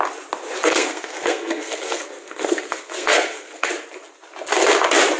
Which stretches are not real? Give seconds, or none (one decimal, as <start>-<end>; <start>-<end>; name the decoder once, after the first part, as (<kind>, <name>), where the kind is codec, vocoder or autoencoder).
0.6-3.7 (codec, SNAC)